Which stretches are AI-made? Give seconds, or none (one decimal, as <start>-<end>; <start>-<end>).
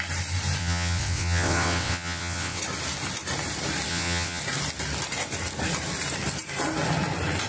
0.6-2.6; 3.9-4.4